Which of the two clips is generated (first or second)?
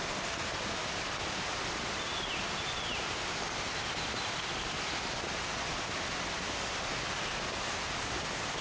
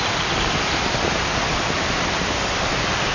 second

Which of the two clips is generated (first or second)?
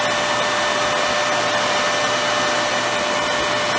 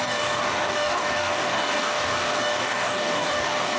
second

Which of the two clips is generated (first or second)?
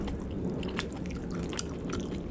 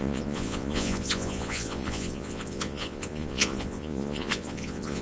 second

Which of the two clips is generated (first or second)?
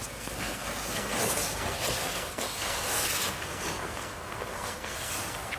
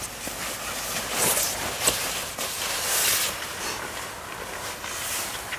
first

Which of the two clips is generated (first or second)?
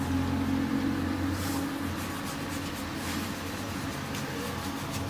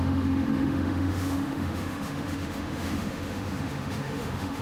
second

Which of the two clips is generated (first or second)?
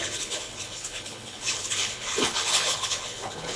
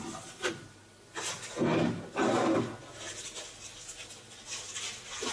first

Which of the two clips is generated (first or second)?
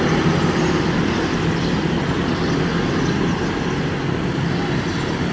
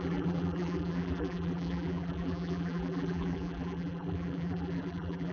second